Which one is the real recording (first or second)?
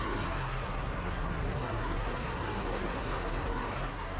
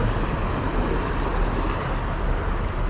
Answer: second